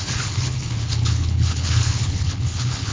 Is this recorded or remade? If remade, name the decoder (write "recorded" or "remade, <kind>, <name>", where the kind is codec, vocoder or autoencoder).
remade, codec, HILCodec